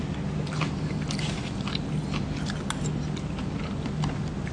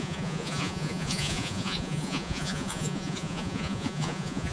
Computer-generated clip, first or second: second